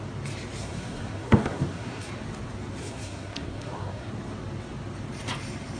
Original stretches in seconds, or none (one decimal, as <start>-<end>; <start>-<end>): 0.0-0.6; 2.1-2.8; 4.1-5.8

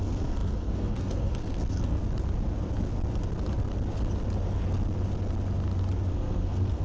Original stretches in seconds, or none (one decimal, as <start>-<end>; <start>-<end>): 2.0-6.1

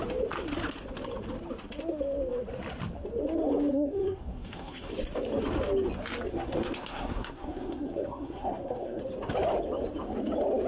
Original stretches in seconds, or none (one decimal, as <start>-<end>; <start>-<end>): 0.0-3.7; 4.9-6.3; 9.0-10.7

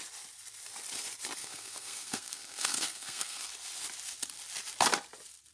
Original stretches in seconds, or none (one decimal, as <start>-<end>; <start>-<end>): 0.0-1.4; 3.5-5.5

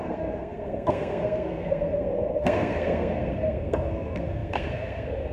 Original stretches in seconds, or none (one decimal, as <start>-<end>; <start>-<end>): none

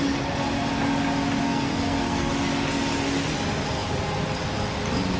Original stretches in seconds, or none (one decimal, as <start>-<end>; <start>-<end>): 0.0-1.4; 2.3-5.2